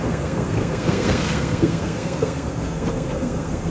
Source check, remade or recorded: remade